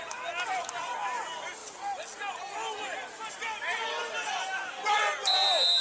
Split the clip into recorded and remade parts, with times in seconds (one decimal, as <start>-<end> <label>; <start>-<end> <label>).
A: 0.0-5.8 recorded